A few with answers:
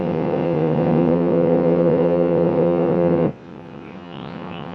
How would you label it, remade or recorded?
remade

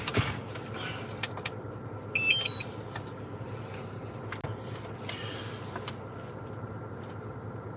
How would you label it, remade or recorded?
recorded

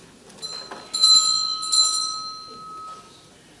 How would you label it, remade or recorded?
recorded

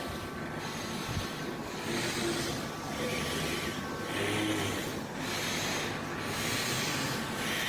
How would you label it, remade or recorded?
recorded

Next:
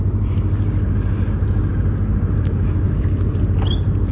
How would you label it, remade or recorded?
recorded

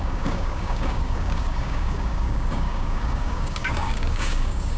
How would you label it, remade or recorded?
remade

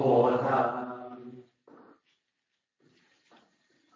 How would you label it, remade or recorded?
recorded